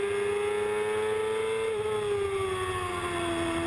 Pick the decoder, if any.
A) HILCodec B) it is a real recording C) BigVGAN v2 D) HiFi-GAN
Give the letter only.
B